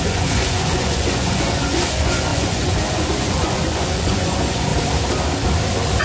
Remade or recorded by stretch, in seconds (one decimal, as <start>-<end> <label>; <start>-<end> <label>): 0.0-4.7 remade; 4.7-6.0 recorded